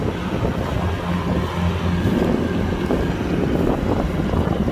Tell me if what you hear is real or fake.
real